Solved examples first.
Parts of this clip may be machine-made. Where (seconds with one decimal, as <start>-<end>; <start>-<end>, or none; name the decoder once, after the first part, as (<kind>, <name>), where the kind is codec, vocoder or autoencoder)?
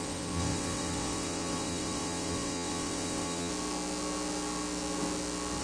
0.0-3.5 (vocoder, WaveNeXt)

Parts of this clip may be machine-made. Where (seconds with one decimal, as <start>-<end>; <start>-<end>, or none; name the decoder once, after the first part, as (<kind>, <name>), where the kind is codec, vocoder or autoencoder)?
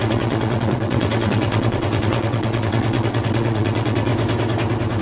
0.0-4.1 (vocoder, WaveNeXt)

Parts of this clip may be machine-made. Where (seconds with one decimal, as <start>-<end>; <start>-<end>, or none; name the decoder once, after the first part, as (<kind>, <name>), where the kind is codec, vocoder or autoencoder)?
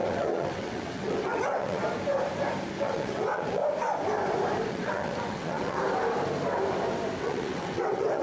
0.0-1.8 (vocoder, WaveNeXt); 2.8-3.6; 4.7-5.8; 7.2-8.2